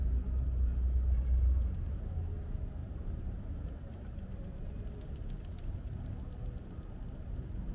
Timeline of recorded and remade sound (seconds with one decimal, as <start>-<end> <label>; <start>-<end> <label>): 0.0-2.8 recorded; 2.8-4.7 remade; 4.7-7.7 recorded